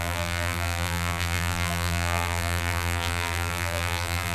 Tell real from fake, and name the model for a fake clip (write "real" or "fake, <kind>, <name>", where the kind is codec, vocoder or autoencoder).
fake, vocoder, BigVGAN v2